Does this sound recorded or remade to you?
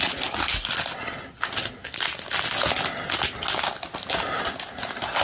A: recorded